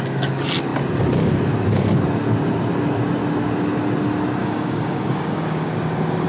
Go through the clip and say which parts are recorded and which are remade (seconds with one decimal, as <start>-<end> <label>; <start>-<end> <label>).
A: 0.0-4.4 recorded; 4.4-5.7 remade; 5.7-6.3 recorded